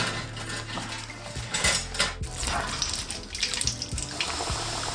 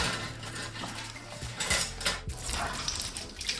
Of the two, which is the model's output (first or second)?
second